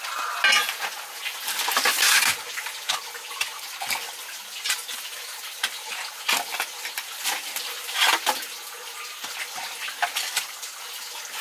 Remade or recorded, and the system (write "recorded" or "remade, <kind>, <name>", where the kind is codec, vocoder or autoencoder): recorded